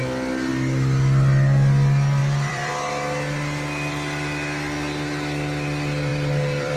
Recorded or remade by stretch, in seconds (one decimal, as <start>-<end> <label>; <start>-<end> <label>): 0.0-2.2 recorded; 2.2-2.7 remade; 2.7-6.1 recorded; 6.1-6.8 remade